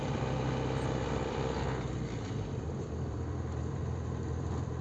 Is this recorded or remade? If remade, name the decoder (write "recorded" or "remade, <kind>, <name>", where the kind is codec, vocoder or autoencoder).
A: remade, vocoder, BigVGAN v2